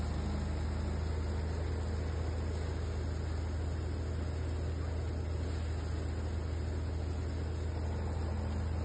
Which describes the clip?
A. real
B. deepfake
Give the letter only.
A